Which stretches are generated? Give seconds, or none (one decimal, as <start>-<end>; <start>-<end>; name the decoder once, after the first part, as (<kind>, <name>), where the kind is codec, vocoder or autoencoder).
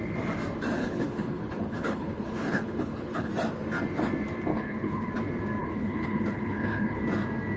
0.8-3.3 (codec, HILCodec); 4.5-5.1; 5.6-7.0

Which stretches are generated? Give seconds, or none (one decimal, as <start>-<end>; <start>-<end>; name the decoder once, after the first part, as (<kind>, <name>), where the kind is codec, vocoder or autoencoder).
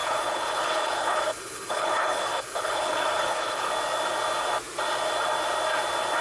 0.0-3.7 (codec, HILCodec)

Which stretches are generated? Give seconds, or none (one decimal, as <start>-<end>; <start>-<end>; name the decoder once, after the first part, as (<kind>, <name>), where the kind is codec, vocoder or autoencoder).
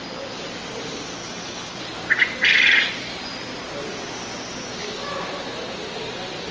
1.2-1.8 (codec, HILCodec)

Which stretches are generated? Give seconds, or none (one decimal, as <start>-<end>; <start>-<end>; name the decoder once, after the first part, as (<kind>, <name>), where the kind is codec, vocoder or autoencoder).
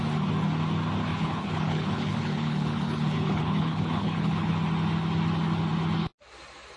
1.1-4.5 (codec, HILCodec)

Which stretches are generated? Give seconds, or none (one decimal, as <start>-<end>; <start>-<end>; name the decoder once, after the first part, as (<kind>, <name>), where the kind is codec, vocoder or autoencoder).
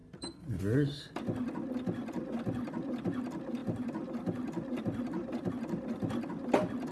none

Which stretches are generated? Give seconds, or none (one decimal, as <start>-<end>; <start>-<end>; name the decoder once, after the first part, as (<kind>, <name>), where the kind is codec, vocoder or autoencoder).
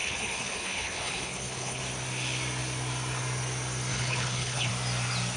0.0-1.8 (codec, HILCodec); 3.9-4.7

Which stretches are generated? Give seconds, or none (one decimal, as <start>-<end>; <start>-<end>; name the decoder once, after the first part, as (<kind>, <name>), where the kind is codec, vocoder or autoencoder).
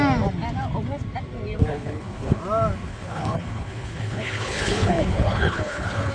1.7-2.4 (codec, HILCodec); 2.9-6.1